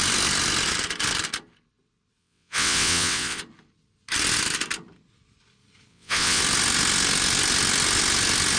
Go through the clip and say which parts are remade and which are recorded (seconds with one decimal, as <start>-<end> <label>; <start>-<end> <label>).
0.0-2.2 recorded; 2.2-3.4 remade; 3.4-5.9 recorded; 5.9-6.4 remade; 6.4-8.6 recorded